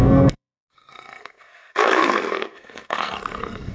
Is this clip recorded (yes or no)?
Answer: no